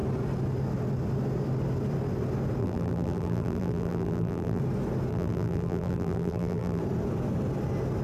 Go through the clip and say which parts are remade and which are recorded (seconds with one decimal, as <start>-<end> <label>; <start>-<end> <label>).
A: 0.0-2.6 recorded; 2.6-4.6 remade; 4.6-5.1 recorded; 5.1-6.8 remade; 6.8-8.0 recorded